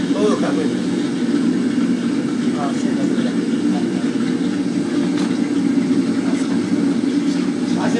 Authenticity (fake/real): real